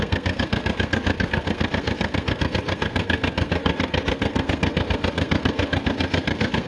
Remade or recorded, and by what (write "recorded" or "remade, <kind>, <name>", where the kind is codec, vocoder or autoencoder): remade, codec, SNAC